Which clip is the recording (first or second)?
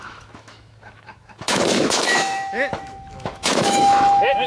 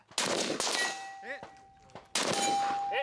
second